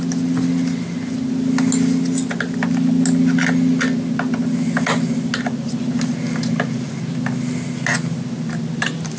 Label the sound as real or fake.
real